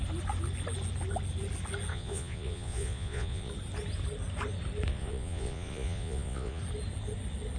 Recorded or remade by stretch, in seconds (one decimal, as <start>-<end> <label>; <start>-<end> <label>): 0.0-1.9 recorded; 1.9-3.5 remade; 3.5-4.9 recorded; 4.9-6.6 remade; 6.6-7.6 recorded